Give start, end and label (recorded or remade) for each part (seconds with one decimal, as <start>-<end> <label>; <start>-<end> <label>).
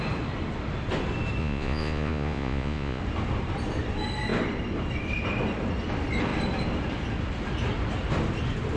0.0-1.4 recorded; 1.4-3.0 remade; 3.0-8.8 recorded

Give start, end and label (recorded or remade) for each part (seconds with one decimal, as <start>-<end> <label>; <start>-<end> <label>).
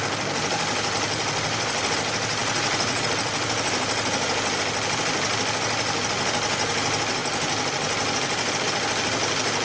0.0-2.4 recorded; 2.4-3.3 remade; 3.3-9.6 recorded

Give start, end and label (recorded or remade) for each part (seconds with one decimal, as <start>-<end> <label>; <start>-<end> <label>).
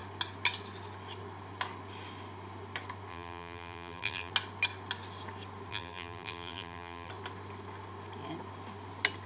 0.0-3.1 recorded; 3.1-4.3 remade; 4.3-5.7 recorded; 5.7-7.1 remade; 7.1-9.3 recorded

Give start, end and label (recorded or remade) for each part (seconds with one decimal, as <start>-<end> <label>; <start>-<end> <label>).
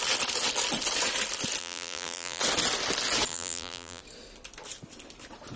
0.0-1.6 recorded; 1.6-2.4 remade; 2.4-3.3 recorded; 3.3-4.0 remade; 4.0-5.6 recorded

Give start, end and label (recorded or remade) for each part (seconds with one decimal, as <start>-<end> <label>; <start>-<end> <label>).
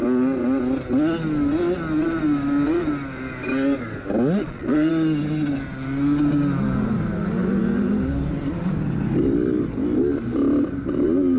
0.0-4.4 recorded; 4.4-4.9 remade; 4.9-11.4 recorded